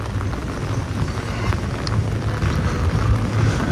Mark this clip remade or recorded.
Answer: recorded